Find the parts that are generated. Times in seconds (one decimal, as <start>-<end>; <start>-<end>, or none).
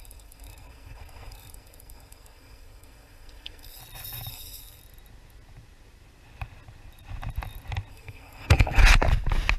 0.0-3.8; 4.3-4.8; 7.9-8.8